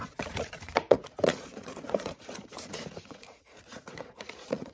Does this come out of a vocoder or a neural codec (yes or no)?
yes